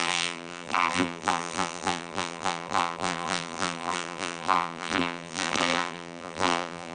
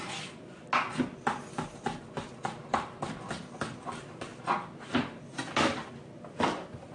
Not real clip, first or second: first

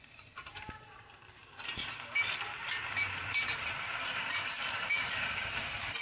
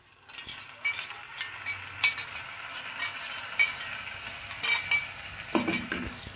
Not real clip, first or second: first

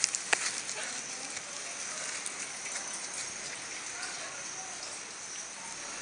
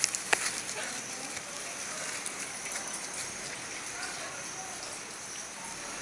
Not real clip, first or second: second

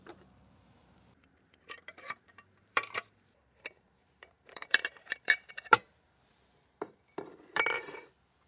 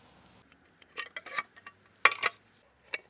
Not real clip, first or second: first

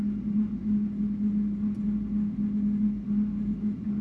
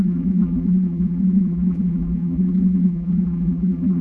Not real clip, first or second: second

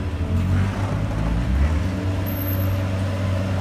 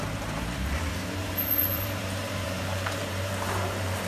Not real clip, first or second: second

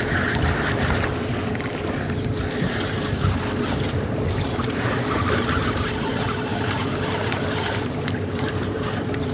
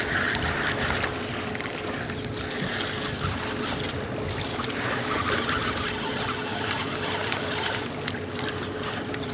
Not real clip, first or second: first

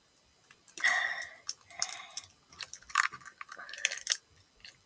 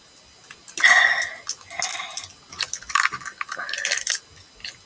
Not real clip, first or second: first